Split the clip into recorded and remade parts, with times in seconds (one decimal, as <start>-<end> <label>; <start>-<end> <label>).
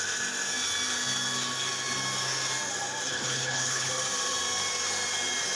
0.0-3.1 recorded; 3.1-3.9 remade; 3.9-5.5 recorded